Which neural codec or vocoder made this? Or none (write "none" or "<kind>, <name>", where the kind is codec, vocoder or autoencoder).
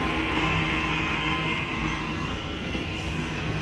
codec, SNAC